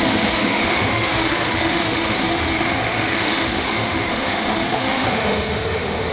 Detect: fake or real fake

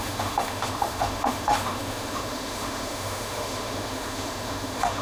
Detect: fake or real fake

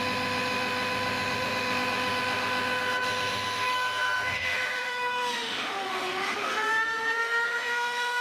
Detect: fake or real fake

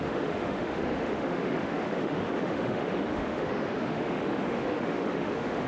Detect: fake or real fake